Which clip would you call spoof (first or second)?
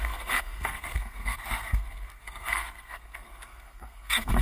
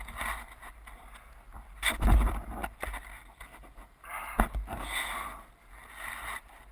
first